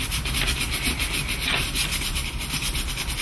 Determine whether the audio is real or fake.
real